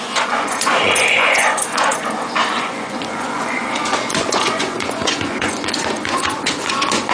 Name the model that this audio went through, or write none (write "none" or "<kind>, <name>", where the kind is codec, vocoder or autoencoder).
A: vocoder, Vocos